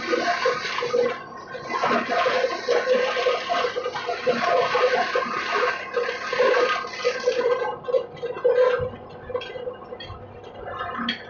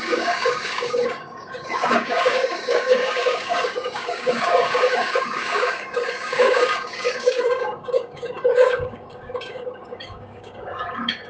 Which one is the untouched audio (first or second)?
first